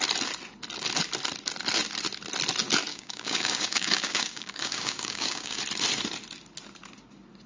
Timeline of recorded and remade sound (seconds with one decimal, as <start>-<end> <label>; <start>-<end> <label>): 0.0-2.9 recorded; 2.9-5.6 remade; 5.6-7.5 recorded